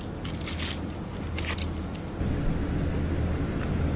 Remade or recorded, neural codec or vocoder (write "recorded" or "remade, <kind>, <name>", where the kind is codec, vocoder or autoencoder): recorded